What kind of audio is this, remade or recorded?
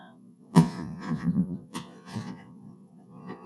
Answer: remade